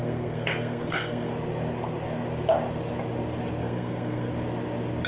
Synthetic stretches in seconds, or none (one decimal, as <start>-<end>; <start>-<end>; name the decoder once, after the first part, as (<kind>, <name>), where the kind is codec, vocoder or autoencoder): 0.0-1.3 (codec, SNAC); 3.6-4.3